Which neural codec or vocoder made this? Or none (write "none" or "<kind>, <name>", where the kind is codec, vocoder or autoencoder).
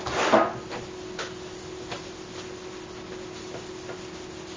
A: none